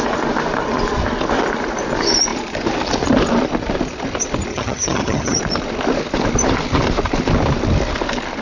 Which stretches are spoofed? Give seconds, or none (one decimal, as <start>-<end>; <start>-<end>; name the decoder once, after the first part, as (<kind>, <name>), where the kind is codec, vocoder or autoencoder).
4.5-5.4 (vocoder, HiFi-GAN)